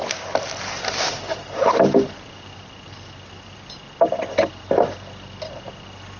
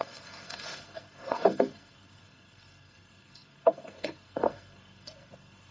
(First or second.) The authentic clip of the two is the first